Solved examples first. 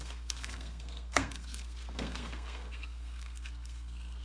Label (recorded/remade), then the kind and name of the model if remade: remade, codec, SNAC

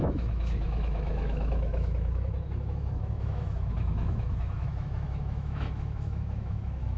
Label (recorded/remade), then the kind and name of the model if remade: remade, autoencoder, DAC-VAE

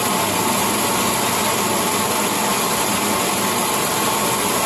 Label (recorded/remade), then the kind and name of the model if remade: recorded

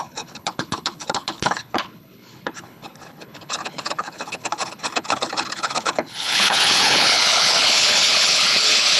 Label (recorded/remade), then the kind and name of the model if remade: remade, codec, HILCodec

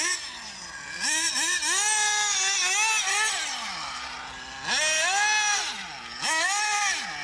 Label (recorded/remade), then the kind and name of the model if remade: recorded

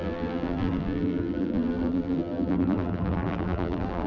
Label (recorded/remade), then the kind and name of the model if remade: remade, vocoder, BigVGAN v2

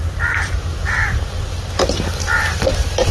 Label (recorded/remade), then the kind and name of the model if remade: recorded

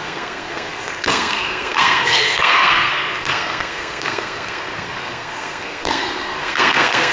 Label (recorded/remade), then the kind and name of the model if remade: remade, codec, SNAC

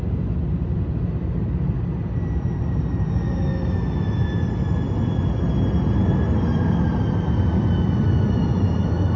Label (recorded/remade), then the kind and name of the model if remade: recorded